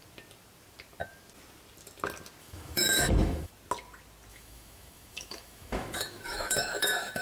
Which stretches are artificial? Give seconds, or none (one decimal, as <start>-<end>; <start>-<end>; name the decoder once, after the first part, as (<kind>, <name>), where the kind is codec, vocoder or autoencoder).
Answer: 2.4-3.5 (autoencoder, DAC-VAE); 4.3-7.2